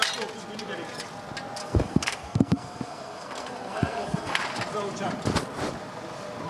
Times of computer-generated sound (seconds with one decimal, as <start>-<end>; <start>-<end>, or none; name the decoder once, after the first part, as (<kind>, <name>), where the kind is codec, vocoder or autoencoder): 1.6-4.4 (codec, SNAC)